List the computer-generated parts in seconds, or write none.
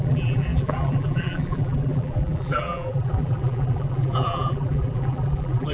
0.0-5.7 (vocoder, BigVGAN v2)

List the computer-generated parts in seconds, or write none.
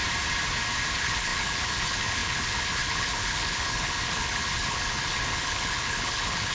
0.9-6.5 (codec, HILCodec)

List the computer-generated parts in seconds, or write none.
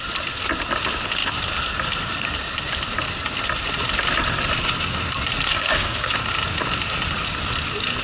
5.5-6.1 (codec, SNAC)